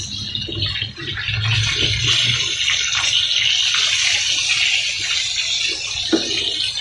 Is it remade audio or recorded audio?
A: recorded